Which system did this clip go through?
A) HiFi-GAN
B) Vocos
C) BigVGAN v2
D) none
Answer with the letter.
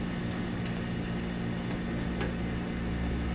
D